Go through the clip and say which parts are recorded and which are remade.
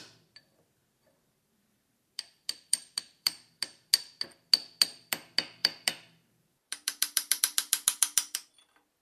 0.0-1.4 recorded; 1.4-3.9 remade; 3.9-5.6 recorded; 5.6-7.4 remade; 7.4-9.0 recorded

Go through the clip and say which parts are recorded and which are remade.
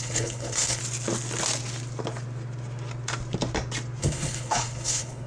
0.0-0.8 remade; 0.8-4.0 recorded; 4.0-5.3 remade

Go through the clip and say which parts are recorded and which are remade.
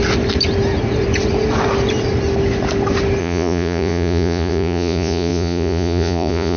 0.0-3.2 recorded; 3.2-6.6 remade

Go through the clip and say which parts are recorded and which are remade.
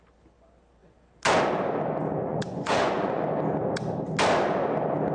0.0-2.3 recorded; 2.3-3.2 remade; 3.2-5.1 recorded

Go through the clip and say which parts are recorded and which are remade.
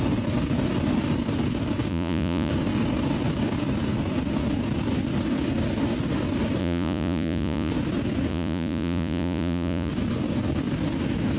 0.0-1.9 recorded; 1.9-2.5 remade; 2.5-6.6 recorded; 6.6-7.7 remade; 7.7-8.3 recorded; 8.3-9.9 remade; 9.9-11.4 recorded